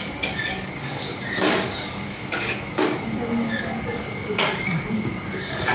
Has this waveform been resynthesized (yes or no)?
yes